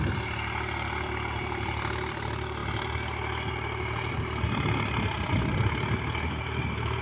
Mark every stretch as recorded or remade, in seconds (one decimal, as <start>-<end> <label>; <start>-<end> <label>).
0.0-7.0 recorded